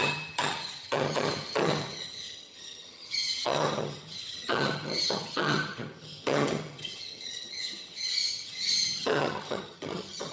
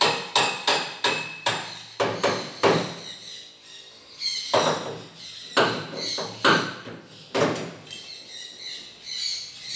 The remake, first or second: first